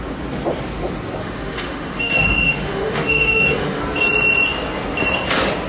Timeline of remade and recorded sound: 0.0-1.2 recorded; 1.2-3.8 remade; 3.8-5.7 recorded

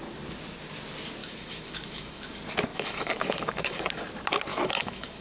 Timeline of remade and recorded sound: 0.0-1.2 recorded; 1.2-2.3 remade; 2.3-2.7 recorded; 2.7-3.8 remade; 3.8-4.5 recorded; 4.5-5.2 remade

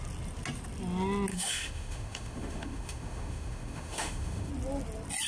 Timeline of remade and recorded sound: 0.0-1.3 recorded; 1.3-4.5 remade; 4.5-5.3 recorded

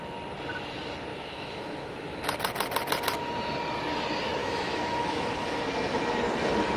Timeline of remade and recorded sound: 0.0-1.1 recorded; 1.1-2.2 remade; 2.2-4.4 recorded; 4.4-5.6 remade; 5.6-6.8 recorded